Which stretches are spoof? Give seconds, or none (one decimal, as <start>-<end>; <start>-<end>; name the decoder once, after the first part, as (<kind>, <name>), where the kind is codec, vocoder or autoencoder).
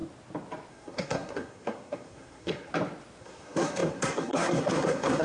0.7-2.7 (codec, SNAC); 3.2-5.2